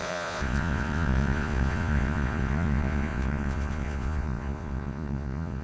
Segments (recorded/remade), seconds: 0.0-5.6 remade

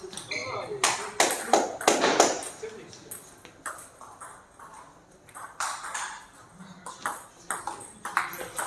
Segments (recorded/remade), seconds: 0.0-8.7 recorded

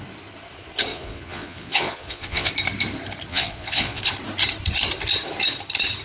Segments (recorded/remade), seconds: 0.0-0.9 recorded; 0.9-2.5 remade; 2.5-3.3 recorded; 3.3-4.0 remade; 4.0-6.0 recorded

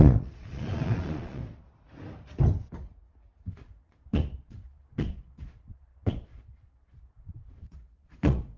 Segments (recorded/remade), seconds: 0.0-1.4 remade; 1.4-3.5 recorded; 3.5-8.6 remade

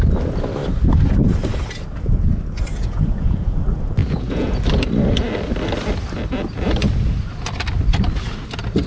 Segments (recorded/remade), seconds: 0.0-2.7 recorded; 2.7-3.6 remade; 3.6-4.0 recorded; 4.0-4.6 remade; 4.6-8.9 recorded